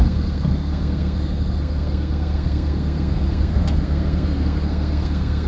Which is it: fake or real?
fake